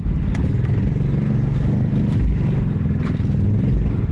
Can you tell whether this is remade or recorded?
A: recorded